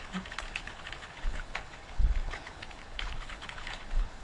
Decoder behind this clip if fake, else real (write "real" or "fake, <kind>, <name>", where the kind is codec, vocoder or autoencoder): fake, codec, HILCodec